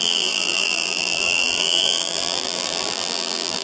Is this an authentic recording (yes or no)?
no